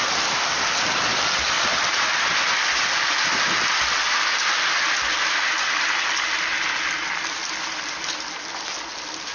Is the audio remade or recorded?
recorded